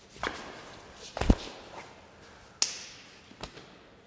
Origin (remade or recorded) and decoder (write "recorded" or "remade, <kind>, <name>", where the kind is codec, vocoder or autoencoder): recorded